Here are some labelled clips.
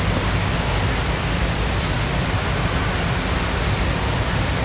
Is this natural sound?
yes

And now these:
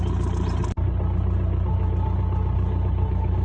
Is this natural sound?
yes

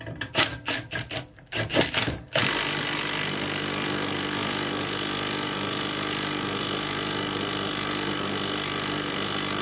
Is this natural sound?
yes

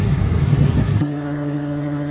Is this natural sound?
no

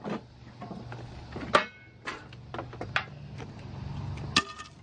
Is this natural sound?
yes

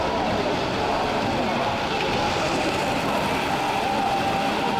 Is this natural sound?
yes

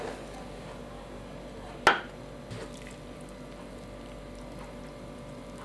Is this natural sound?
yes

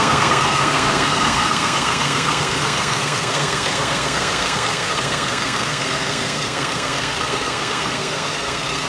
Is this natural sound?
no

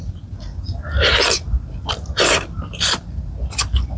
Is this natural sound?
yes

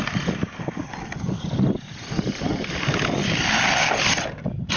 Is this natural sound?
yes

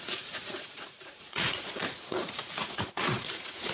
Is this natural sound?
no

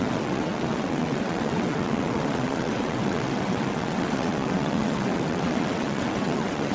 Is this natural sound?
no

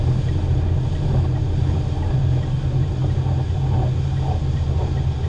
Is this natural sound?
yes